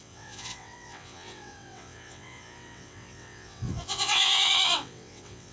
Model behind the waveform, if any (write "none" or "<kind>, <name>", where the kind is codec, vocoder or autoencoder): vocoder, WaveNeXt